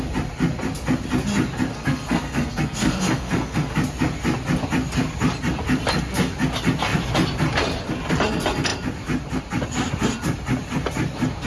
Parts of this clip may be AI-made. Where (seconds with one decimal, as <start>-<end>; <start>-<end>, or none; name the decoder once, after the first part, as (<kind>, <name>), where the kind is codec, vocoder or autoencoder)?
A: 1.7-3.7 (codec, SNAC)